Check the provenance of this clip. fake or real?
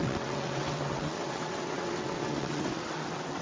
fake